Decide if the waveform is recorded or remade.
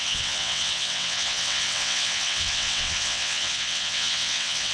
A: remade